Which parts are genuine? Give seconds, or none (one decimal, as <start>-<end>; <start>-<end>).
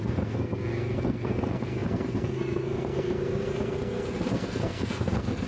none